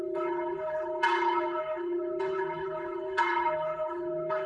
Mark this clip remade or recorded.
remade